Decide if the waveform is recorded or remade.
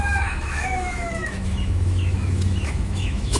remade